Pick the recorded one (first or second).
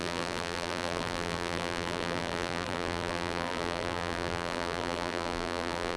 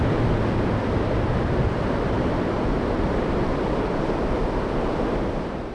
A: second